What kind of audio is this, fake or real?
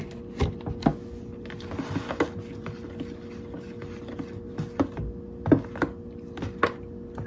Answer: real